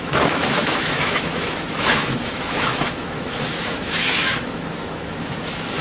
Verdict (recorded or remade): remade